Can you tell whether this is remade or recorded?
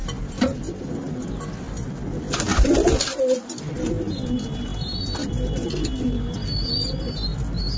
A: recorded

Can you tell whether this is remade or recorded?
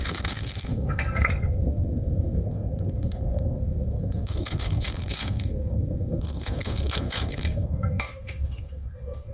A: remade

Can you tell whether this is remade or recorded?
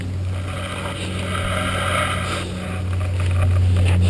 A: recorded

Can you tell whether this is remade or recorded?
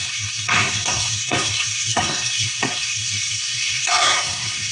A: remade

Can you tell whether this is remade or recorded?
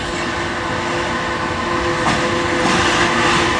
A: recorded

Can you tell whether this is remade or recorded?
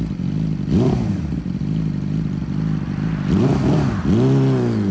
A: recorded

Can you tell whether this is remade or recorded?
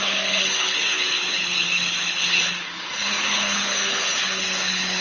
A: remade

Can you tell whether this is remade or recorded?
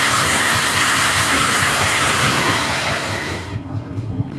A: remade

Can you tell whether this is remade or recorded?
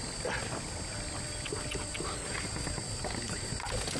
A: recorded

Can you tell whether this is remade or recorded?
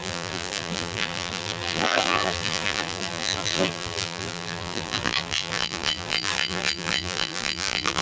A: remade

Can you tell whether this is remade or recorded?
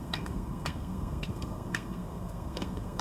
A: remade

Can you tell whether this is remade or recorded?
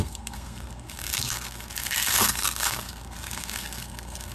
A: remade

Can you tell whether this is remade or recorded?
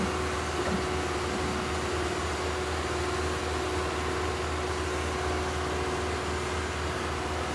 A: recorded